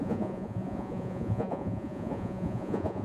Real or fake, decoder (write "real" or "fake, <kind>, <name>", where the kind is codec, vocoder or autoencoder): fake, vocoder, Vocos